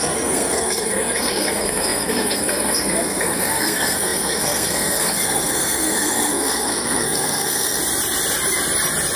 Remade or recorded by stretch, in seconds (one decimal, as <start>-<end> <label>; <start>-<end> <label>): 0.0-7.8 remade; 7.8-9.2 recorded